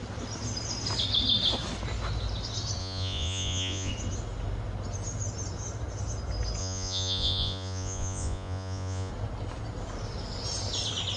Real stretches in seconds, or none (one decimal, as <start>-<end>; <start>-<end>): 0.0-2.8; 3.9-6.6; 9.1-11.2